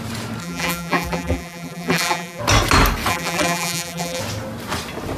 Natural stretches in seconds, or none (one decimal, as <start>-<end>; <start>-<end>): 0.0-0.4; 2.4-3.1; 4.2-5.2